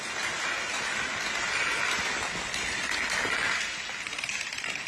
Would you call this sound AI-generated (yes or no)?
no